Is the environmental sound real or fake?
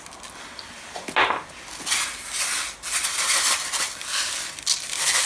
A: real